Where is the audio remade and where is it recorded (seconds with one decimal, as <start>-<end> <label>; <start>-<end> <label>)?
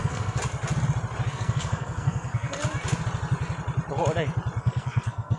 0.0-0.4 remade; 0.4-1.3 recorded; 1.3-2.6 remade; 2.6-4.6 recorded; 4.6-5.4 remade